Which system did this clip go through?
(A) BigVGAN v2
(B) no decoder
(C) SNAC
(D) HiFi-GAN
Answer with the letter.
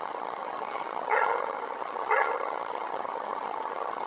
D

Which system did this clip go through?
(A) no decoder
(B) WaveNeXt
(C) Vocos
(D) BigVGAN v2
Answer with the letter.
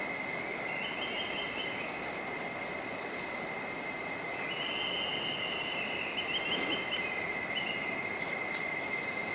A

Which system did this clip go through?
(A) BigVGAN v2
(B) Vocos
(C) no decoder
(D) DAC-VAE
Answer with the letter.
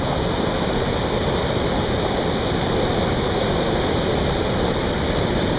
C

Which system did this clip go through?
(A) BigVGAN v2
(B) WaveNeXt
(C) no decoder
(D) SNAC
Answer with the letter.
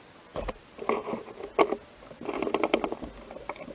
C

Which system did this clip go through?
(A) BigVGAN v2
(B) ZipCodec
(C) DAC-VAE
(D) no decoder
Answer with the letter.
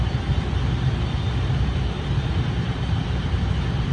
A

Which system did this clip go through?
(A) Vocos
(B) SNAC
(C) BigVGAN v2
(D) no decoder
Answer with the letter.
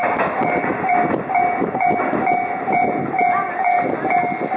D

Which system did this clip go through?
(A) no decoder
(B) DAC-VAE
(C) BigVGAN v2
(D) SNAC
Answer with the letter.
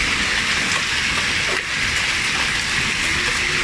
A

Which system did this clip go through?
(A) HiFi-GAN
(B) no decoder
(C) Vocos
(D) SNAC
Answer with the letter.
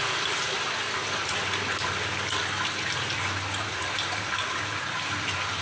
B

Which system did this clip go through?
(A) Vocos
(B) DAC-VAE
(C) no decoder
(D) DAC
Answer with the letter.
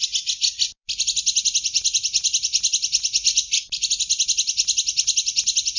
C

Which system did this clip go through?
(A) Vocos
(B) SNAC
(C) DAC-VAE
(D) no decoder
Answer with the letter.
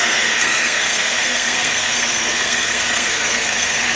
B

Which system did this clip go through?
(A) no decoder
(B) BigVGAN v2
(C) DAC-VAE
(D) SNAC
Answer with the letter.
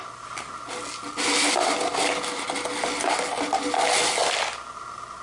A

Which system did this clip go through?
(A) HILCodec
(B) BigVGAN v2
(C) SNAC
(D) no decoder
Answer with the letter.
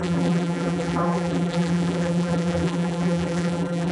B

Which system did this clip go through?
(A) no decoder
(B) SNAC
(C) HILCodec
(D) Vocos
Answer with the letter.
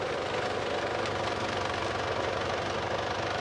A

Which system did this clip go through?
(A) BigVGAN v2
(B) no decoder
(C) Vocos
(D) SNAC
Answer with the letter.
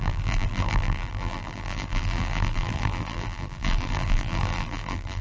A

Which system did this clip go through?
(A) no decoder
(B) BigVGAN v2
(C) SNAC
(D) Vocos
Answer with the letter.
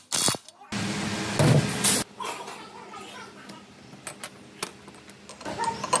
A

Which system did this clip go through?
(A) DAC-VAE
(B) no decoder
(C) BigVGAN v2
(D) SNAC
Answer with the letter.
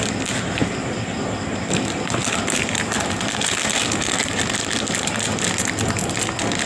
B